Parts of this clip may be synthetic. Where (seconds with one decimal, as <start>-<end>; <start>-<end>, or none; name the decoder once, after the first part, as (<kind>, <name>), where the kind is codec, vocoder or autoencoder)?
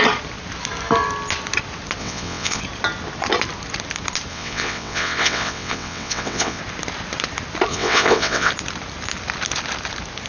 2.0-2.6 (vocoder, WaveNeXt); 4.3-6.6; 7.7-8.5